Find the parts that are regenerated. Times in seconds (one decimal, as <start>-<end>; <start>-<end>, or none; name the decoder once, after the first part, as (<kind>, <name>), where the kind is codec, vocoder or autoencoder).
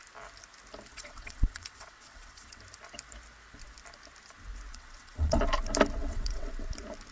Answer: 0.9-2.6 (vocoder, WaveNeXt); 4.7-5.4; 6.0-6.5